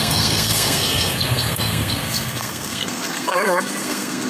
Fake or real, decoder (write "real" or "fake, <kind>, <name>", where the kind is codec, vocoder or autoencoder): fake, codec, SNAC